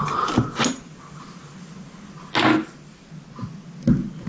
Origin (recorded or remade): recorded